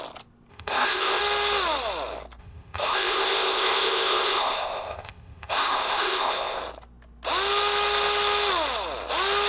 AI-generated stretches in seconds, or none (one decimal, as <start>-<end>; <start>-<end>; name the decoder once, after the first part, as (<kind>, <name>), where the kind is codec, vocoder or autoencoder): 0.5-1.2 (codec, ZipCodec); 2.4-6.6